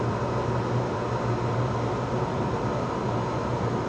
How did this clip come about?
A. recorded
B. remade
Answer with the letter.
A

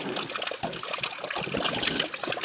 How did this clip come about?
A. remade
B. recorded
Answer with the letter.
B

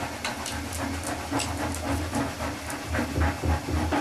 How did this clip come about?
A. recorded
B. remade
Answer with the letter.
A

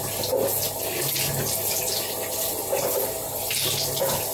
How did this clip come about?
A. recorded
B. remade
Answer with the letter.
A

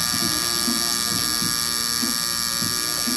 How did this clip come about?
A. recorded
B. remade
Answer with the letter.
A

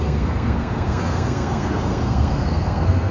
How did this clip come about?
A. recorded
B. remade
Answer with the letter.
B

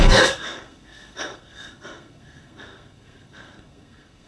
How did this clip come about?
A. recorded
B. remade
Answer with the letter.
B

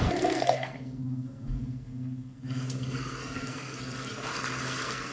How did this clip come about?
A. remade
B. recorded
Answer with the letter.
A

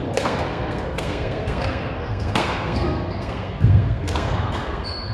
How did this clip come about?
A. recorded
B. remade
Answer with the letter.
B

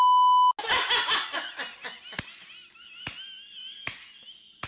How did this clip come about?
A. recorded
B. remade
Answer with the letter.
A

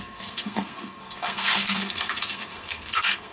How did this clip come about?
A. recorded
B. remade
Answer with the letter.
B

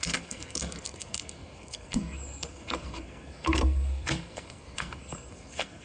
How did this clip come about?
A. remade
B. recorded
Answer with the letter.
A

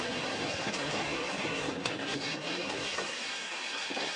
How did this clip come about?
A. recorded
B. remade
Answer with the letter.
B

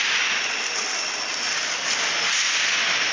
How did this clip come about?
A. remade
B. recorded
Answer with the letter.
B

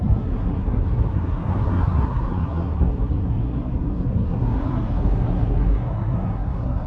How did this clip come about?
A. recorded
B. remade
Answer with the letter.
B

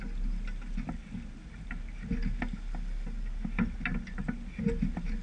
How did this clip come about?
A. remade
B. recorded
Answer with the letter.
B